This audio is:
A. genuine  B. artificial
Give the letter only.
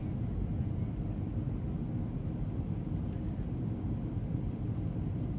A